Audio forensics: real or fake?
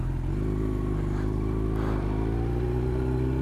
real